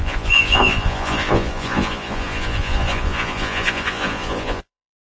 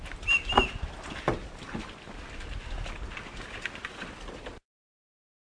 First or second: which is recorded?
second